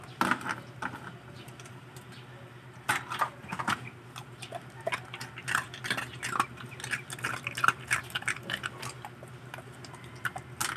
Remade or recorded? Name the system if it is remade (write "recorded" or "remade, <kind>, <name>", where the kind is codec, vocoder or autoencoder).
recorded